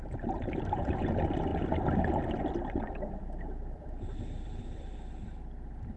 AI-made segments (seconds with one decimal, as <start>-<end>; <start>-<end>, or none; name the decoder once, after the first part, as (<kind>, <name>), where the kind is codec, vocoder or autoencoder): 0.0-1.5 (vocoder, BigVGAN v2); 2.4-6.0